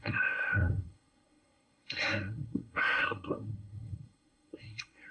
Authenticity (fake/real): fake